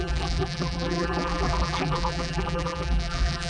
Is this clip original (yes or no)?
no